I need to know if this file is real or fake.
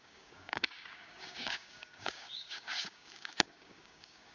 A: fake